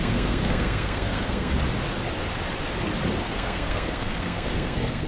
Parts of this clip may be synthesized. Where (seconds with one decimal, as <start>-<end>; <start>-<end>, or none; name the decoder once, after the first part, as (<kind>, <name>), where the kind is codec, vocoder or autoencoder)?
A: 0.0-1.5 (codec, SNAC); 3.2-5.1